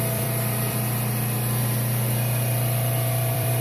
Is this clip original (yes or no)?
no